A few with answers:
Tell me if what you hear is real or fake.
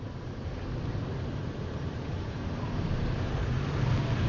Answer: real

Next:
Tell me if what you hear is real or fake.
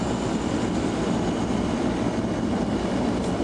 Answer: real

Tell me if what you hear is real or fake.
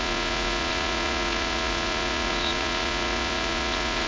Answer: fake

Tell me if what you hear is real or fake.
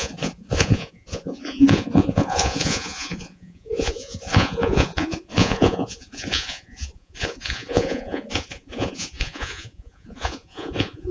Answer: fake